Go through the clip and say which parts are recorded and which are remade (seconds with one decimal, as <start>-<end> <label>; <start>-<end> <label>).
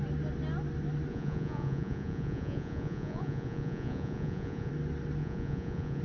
0.0-1.1 recorded; 1.1-4.7 remade; 4.7-5.2 recorded; 5.2-6.0 remade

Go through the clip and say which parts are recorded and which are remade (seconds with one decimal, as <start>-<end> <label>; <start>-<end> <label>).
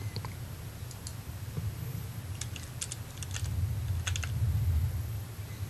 0.0-5.7 recorded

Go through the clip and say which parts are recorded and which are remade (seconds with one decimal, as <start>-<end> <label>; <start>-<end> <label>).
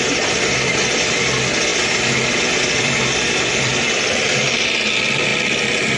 0.0-1.7 recorded; 1.7-4.5 remade; 4.5-5.3 recorded; 5.3-6.0 remade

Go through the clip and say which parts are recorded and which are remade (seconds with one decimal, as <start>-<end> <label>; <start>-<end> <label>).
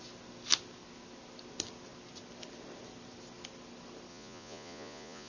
0.0-4.1 recorded; 4.1-5.3 remade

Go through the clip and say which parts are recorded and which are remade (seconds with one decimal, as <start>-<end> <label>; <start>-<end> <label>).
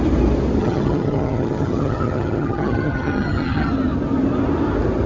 0.0-0.6 recorded; 0.6-3.7 remade; 3.7-5.1 recorded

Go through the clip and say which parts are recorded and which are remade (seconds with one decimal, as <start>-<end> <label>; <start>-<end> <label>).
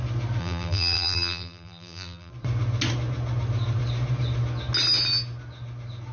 0.0-0.4 recorded; 0.4-2.3 remade; 2.3-6.1 recorded